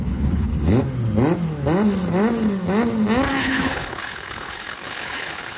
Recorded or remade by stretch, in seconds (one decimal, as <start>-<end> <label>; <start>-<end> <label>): 0.0-0.5 remade; 0.5-3.4 recorded; 3.4-5.6 remade